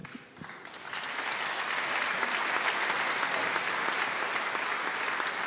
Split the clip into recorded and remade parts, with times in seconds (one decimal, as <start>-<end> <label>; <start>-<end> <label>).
0.0-5.5 recorded